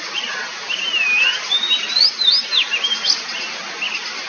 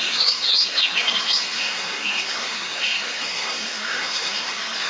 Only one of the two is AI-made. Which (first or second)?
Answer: second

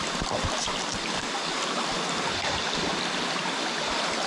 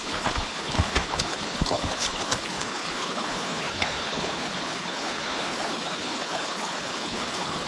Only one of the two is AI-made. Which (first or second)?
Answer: second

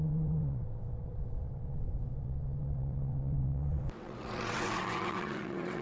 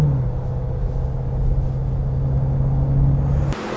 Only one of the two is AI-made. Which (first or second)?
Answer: first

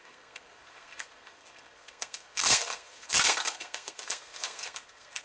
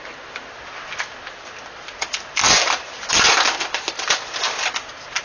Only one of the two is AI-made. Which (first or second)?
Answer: first